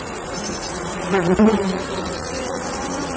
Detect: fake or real fake